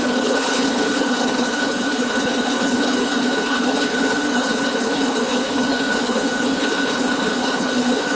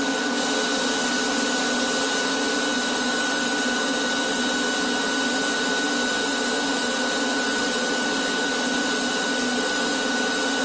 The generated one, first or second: first